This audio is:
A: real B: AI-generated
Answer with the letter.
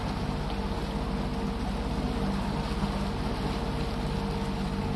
A